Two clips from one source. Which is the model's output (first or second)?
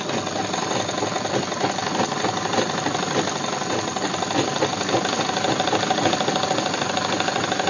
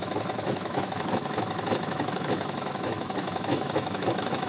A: second